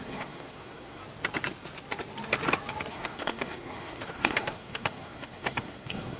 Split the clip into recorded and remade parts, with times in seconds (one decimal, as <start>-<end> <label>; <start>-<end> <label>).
0.0-1.0 remade; 1.0-2.9 recorded; 2.9-6.2 remade